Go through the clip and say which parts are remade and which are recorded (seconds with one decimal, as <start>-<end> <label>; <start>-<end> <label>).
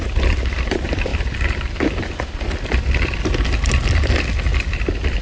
0.0-1.1 remade; 1.1-3.6 recorded; 3.6-5.2 remade